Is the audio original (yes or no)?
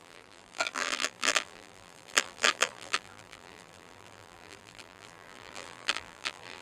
no